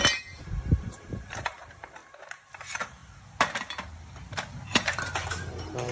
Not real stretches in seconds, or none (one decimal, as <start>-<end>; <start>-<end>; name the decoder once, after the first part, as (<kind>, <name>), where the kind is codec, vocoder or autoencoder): 0.0-2.0 (vocoder, BigVGAN v2); 2.5-3.0; 4.2-5.9